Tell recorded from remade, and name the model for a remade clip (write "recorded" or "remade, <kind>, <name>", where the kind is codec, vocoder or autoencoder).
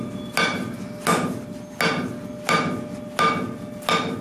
recorded